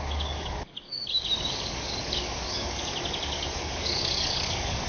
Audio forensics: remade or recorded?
remade